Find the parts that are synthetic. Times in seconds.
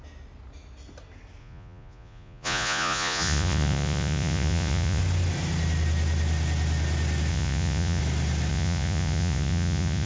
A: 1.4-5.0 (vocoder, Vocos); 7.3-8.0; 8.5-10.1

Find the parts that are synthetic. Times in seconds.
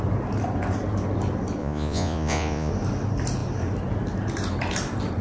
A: 1.6-2.7 (vocoder, Vocos)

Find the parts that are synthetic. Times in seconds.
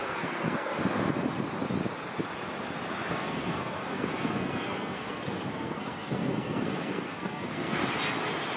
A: 0.0-0.8 (codec, SNAC); 3.1-7.8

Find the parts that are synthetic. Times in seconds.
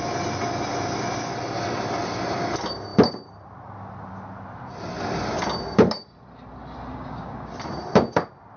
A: 6.9-7.5 (codec, DAC)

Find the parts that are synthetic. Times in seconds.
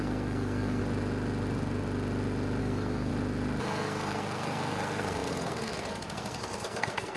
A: 0.0-0.8 (codec, SNAC); 2.6-3.1; 3.6-7.2